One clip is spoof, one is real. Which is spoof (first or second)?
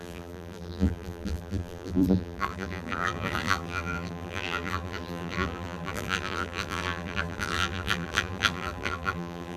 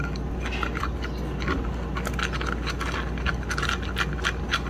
first